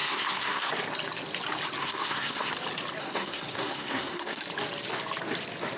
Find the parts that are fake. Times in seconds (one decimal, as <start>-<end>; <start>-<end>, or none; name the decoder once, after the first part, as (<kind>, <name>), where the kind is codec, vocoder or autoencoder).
0.0-0.7 (codec, SNAC); 1.8-2.5; 3.0-4.4